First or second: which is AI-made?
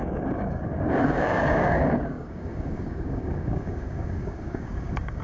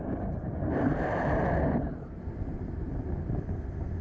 first